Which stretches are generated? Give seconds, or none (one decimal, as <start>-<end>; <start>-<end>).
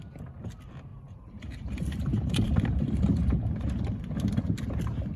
0.9-4.0